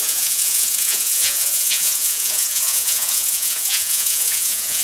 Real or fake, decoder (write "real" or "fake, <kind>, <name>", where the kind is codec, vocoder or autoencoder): fake, vocoder, Vocos